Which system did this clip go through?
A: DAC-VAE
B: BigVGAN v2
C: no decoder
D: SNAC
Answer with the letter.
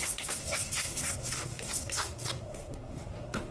D